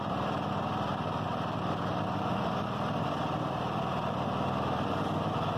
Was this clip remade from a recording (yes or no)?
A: yes